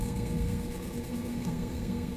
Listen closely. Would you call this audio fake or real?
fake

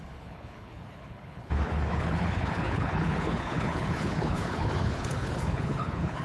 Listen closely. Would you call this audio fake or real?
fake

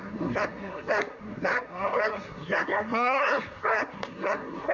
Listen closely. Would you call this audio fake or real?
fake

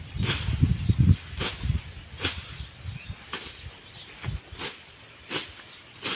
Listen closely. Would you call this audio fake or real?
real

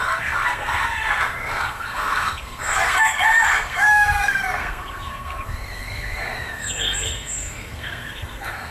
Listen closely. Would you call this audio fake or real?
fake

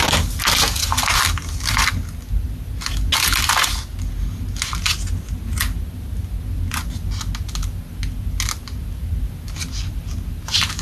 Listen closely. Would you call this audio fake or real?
real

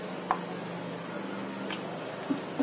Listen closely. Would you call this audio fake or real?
real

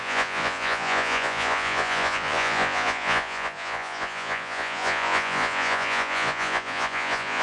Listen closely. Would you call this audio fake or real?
fake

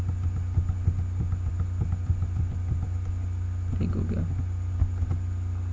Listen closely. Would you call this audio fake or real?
real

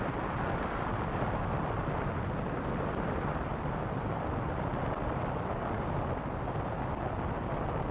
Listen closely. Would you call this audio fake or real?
real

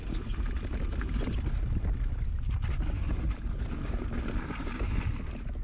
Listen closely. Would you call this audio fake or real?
real